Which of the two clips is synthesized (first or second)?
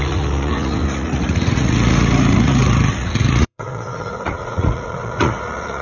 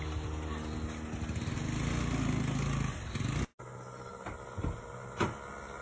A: first